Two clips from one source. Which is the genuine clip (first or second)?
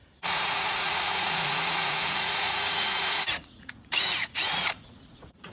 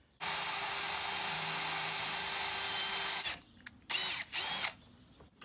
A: second